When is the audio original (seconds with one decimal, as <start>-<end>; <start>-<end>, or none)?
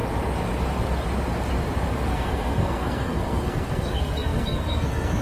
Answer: 0.0-2.1